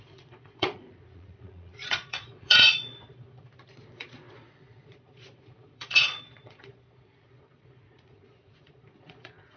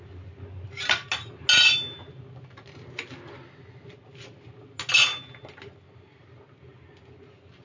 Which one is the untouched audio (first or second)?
second